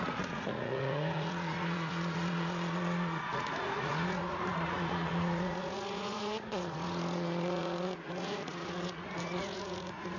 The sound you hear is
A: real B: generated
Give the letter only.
B